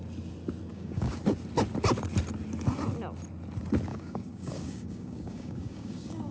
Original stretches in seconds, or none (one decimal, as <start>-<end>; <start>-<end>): 0.0-0.7; 1.2-3.9